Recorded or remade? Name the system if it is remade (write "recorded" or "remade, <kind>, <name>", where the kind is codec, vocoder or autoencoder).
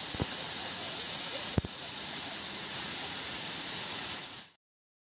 remade, vocoder, Vocos